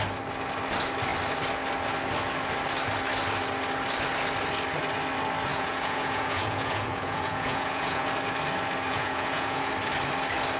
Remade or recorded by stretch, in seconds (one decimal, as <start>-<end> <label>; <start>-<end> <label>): 0.0-5.5 recorded; 5.5-8.1 remade; 8.1-8.9 recorded; 8.9-9.7 remade; 9.7-10.6 recorded